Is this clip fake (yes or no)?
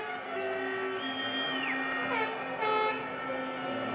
no